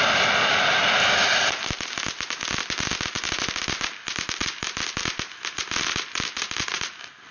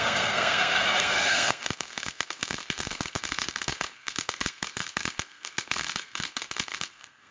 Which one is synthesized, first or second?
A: second